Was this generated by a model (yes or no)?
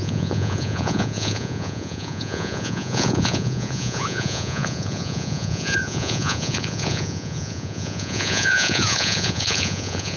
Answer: yes